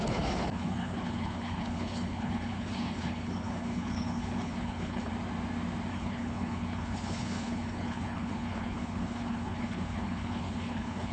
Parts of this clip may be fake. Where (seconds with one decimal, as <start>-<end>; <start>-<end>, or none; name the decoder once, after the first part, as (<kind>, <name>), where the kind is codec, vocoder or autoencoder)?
0.0-5.1 (codec, HILCodec); 5.9-11.1